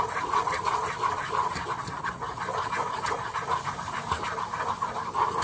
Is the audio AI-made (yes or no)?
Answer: no